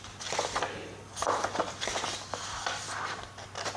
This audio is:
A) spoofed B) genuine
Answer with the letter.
B